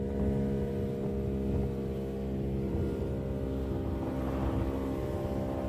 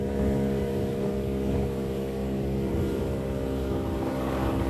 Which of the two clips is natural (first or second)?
first